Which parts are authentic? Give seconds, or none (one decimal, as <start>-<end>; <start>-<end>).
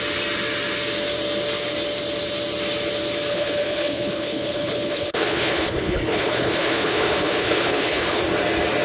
0.0-3.3; 8.2-8.8